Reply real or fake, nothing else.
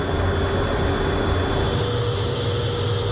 real